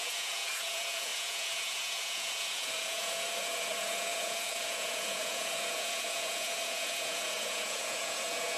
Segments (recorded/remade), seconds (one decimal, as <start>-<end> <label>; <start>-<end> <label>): 0.0-8.6 remade

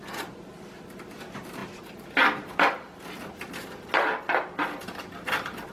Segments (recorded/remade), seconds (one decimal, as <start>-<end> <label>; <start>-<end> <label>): 0.0-1.6 remade; 1.6-5.0 recorded; 5.0-5.7 remade

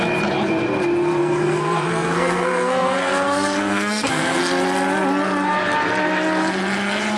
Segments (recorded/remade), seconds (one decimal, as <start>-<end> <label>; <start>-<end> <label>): 0.0-1.2 recorded; 1.2-4.4 remade; 4.4-7.2 recorded

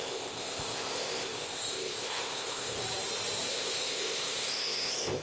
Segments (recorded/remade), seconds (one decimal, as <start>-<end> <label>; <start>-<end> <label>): 0.0-2.8 remade; 2.8-3.5 recorded; 3.5-5.2 remade

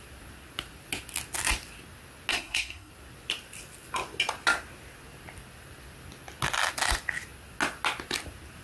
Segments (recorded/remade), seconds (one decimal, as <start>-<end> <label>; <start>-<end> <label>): 0.0-2.3 recorded; 2.3-2.9 remade; 2.9-8.6 recorded

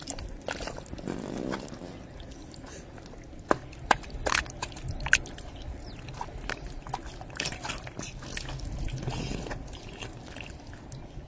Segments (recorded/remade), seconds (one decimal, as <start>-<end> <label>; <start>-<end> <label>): 0.0-11.3 recorded

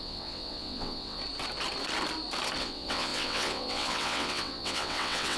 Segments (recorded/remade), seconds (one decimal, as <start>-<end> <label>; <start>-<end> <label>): 0.0-1.2 remade; 1.2-2.6 recorded; 2.6-5.4 remade

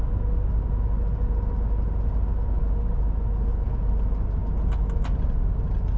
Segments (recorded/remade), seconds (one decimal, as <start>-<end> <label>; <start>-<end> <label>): 0.0-6.0 recorded